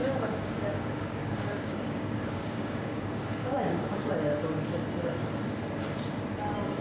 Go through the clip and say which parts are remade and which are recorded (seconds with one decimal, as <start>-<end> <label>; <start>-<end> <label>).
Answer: 0.0-4.1 remade; 4.1-6.8 recorded